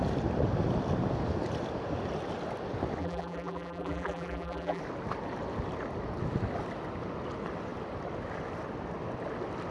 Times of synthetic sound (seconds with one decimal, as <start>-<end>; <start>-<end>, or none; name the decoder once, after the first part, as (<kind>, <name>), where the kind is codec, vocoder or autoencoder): 3.0-4.8 (vocoder, BigVGAN v2)